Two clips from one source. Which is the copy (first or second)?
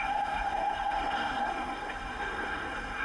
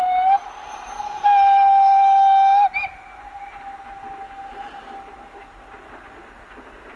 first